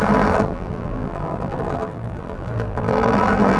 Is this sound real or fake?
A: fake